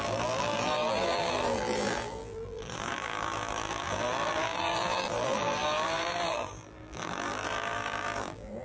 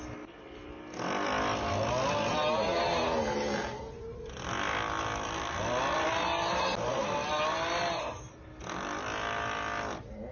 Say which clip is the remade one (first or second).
first